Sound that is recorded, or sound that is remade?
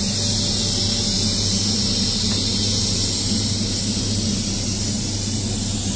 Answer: recorded